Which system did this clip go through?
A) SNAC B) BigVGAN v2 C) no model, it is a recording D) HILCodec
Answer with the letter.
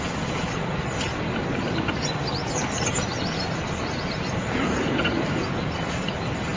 C